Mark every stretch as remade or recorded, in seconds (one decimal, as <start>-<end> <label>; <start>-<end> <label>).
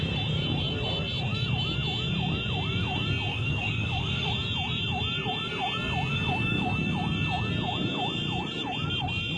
0.0-3.3 recorded; 3.3-4.3 remade; 4.3-6.1 recorded; 6.1-6.7 remade; 6.7-9.4 recorded